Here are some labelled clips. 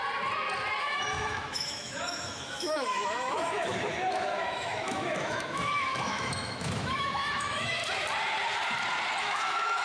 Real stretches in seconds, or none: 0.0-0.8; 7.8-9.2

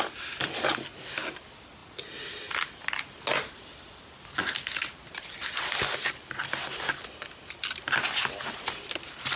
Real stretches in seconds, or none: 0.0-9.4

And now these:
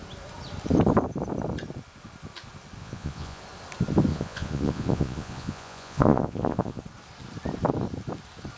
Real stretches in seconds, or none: 0.0-2.8; 3.4-4.1; 6.8-8.6

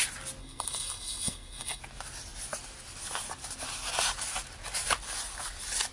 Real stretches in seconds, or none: 0.0-0.4; 1.8-5.9